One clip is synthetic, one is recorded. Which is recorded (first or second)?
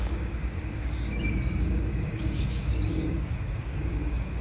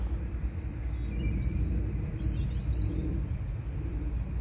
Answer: second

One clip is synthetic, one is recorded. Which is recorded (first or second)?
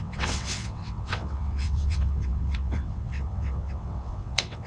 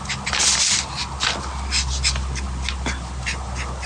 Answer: second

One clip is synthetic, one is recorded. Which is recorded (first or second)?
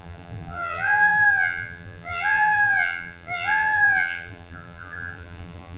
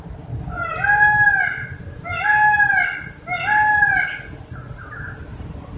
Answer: second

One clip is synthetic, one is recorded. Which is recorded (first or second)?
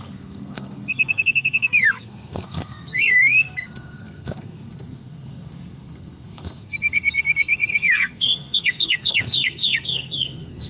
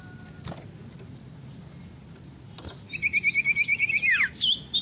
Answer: second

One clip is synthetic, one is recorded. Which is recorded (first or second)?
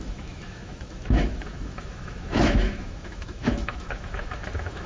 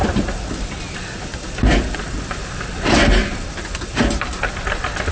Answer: second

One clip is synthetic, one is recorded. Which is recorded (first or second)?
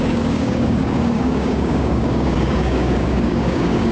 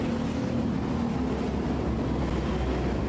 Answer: second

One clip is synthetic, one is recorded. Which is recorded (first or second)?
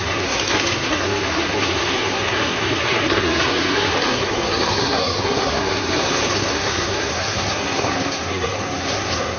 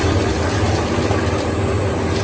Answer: second